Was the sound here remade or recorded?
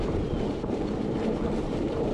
remade